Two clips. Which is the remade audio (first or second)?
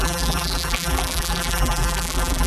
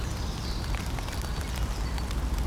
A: first